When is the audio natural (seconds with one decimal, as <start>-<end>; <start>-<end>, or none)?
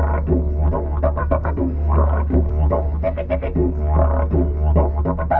0.0-1.2; 2.5-5.4